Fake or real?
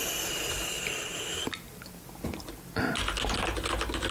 real